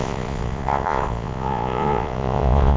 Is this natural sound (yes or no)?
no